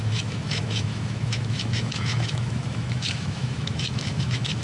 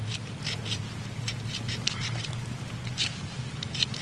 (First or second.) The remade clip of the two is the first